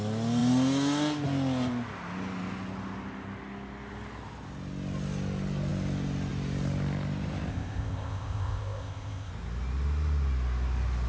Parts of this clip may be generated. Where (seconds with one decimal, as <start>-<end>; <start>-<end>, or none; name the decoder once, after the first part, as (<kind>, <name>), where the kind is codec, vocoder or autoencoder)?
7.5-9.3 (codec, ZipCodec)